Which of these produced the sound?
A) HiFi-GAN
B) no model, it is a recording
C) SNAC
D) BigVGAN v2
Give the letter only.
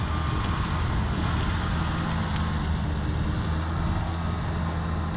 B